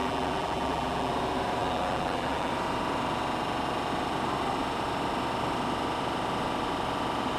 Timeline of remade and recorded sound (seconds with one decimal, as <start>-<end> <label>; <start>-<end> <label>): 0.0-1.1 remade; 1.1-1.6 recorded; 1.6-2.5 remade; 2.5-7.4 recorded